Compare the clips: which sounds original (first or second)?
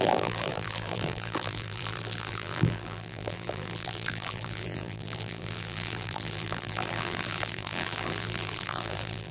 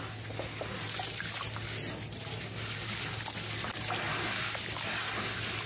second